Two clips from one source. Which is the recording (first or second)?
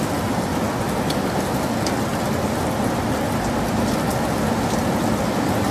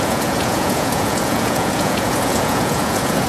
first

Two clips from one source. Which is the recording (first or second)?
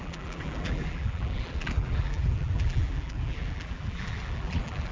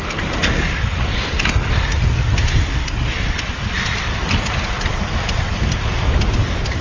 second